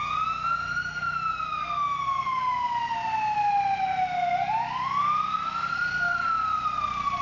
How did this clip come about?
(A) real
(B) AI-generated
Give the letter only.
A